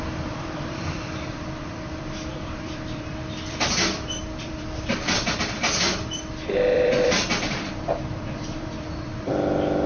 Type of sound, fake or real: fake